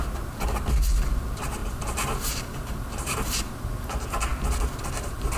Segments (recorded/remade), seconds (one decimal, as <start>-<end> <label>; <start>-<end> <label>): 0.0-1.6 recorded; 1.6-3.5 remade; 3.5-5.4 recorded